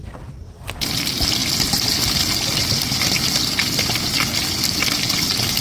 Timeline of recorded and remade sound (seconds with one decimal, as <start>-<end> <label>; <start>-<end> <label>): 0.0-5.6 recorded